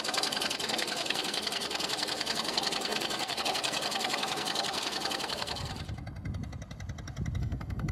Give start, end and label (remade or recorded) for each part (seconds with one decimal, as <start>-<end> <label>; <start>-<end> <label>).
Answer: 0.0-5.7 remade; 5.7-7.4 recorded; 7.4-7.9 remade